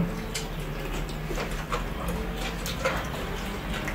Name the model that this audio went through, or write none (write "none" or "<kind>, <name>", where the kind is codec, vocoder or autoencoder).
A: none